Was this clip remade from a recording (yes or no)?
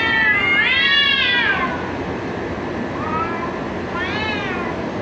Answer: no